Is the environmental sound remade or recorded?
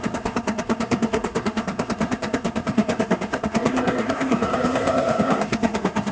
remade